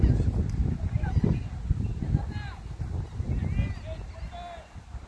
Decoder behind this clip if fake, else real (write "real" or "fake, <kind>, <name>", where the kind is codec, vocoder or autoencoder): real